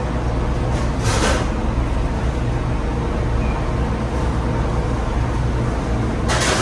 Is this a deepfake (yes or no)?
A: no